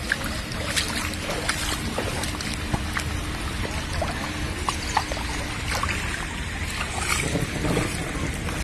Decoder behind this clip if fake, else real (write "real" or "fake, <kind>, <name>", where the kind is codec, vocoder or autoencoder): real